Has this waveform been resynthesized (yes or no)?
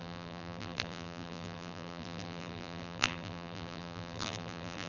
yes